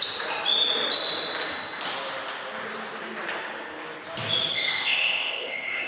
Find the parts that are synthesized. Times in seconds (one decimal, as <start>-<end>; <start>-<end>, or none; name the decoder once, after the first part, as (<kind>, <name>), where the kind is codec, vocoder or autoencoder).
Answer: 4.5-5.9 (codec, ZipCodec)